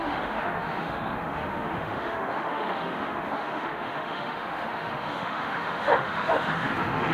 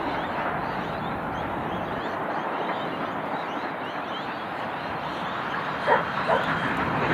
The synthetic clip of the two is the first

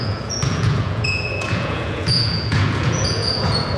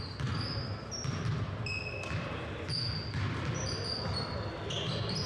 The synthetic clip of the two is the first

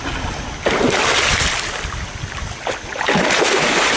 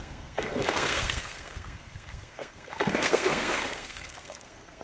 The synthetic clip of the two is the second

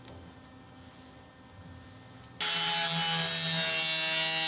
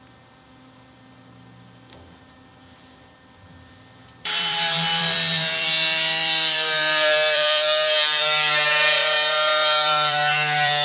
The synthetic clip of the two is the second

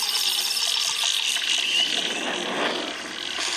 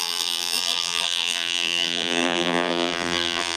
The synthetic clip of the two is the second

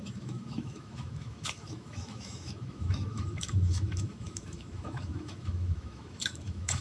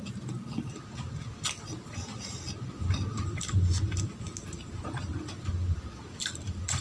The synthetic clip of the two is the first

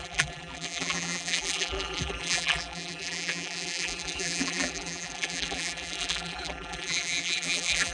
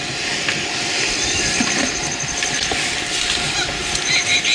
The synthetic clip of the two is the first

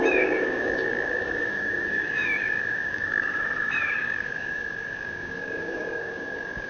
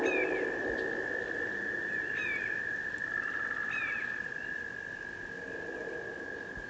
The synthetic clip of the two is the first